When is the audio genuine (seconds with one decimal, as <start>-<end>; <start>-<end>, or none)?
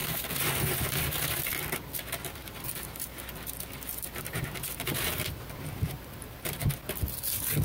0.0-2.4; 3.2-3.9; 6.7-7.6